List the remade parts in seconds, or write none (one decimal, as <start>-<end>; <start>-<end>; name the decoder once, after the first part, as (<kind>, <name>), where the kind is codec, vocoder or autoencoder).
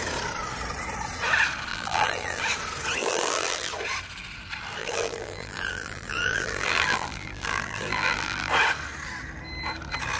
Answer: 1.7-2.4 (vocoder, BigVGAN v2); 3.0-3.7; 4.8-8.5